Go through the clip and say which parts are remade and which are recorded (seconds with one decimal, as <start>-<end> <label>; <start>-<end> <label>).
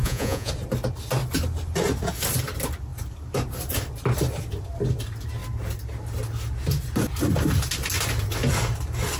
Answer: 0.0-0.5 remade; 0.5-9.2 recorded